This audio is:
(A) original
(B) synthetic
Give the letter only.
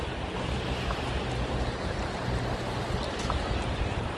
A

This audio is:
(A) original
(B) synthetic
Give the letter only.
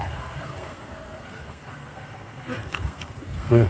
B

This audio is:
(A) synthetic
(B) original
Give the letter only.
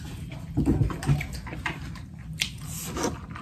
B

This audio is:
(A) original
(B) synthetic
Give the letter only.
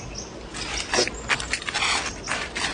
A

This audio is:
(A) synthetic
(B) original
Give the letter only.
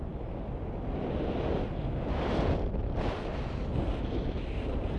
B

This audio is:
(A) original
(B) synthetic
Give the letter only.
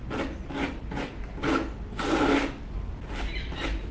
A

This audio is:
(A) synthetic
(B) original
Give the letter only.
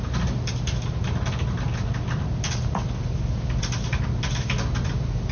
B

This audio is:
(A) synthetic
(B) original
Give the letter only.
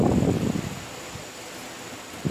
B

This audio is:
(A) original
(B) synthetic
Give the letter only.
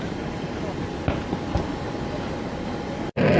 A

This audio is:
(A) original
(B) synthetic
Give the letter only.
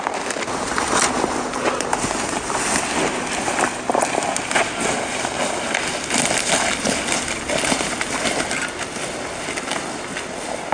A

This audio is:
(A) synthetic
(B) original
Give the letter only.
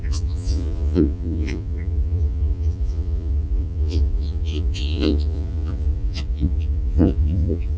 A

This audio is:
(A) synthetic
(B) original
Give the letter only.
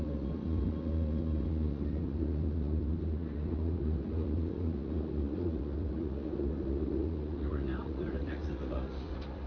A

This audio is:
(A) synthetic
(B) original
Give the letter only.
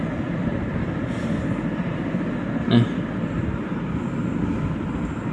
B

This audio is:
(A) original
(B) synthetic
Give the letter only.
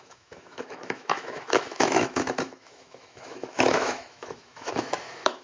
B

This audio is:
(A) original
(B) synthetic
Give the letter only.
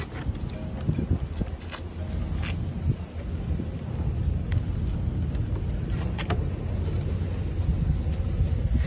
A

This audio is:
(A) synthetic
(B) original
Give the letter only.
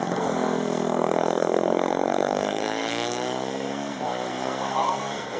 A